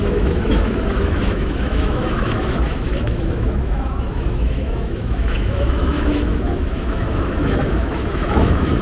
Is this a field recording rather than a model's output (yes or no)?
no